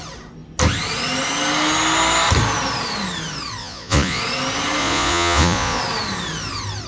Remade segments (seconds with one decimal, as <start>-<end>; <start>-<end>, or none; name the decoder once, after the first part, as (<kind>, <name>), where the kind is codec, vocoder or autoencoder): 3.6-4.2 (vocoder, Vocos); 4.8-5.8